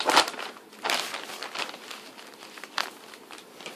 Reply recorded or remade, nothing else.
recorded